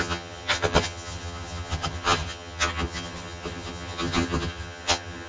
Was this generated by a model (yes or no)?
yes